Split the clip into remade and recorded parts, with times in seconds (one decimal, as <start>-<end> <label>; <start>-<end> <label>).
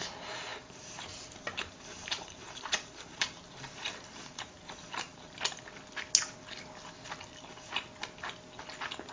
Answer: 0.0-0.5 recorded; 0.5-5.4 remade; 5.4-9.1 recorded